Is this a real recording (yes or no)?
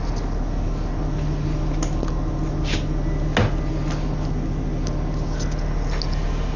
yes